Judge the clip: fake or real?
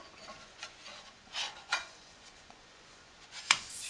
fake